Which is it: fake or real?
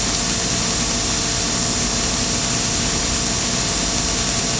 real